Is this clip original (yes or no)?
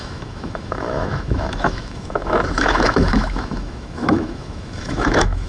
no